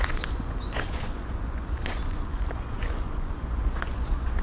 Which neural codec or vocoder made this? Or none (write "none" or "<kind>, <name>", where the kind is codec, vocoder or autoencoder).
vocoder, Vocos